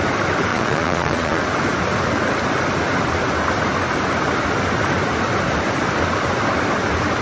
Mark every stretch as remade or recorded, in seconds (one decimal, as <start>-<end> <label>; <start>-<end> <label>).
0.0-0.5 recorded; 0.5-1.4 remade; 1.4-7.2 recorded